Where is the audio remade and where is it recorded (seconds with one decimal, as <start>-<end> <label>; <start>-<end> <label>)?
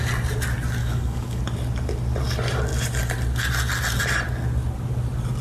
0.0-0.8 recorded; 0.8-1.4 remade; 1.4-5.4 recorded